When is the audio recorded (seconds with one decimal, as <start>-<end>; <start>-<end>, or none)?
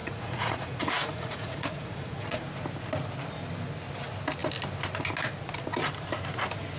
2.4-6.8